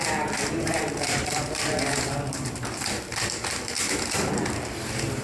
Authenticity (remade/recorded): remade